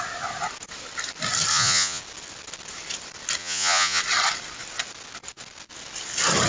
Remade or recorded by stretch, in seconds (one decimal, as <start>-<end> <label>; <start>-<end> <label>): 0.0-1.5 recorded; 1.5-2.0 remade; 2.0-3.4 recorded; 3.4-4.0 remade; 4.0-6.5 recorded